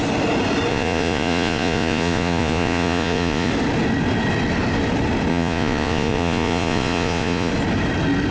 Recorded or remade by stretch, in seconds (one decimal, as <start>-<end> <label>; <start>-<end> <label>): 0.0-0.7 recorded; 0.7-3.5 remade; 3.5-5.3 recorded; 5.3-7.5 remade; 7.5-8.3 recorded